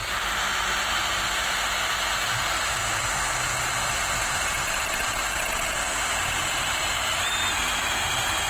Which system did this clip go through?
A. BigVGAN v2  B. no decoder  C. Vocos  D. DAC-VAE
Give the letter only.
B